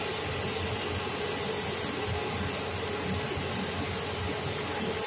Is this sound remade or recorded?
recorded